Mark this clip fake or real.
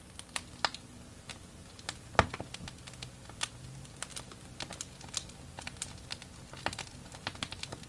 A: real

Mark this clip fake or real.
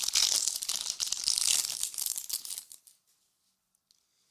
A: real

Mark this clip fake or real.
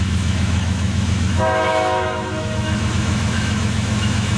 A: fake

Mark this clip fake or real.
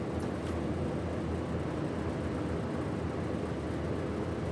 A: real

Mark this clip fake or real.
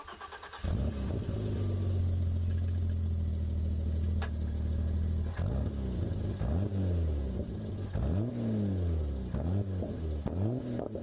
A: real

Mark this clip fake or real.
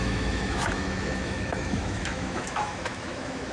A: fake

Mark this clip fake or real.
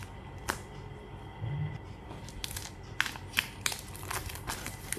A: real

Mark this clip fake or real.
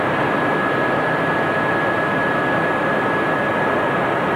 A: real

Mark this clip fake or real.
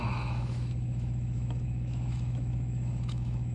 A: fake